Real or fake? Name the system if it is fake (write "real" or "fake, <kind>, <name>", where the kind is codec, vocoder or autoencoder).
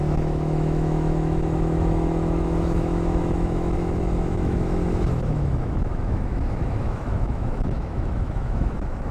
fake, autoencoder, DAC-VAE